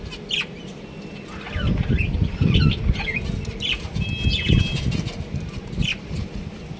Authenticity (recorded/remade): recorded